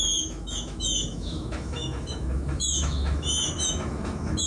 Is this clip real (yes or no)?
no